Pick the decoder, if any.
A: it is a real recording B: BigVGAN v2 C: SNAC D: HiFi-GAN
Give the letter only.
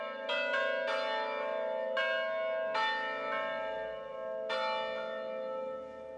A